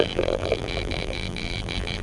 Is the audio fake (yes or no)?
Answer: yes